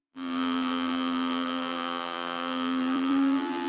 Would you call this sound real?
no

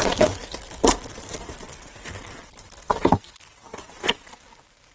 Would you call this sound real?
yes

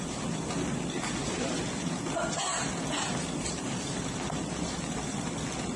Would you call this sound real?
no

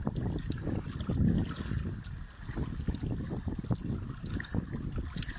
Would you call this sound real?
yes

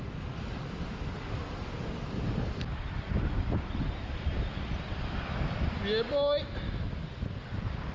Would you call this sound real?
yes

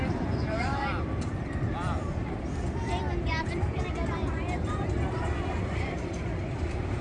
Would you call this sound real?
no